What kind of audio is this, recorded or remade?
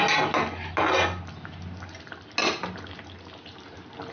recorded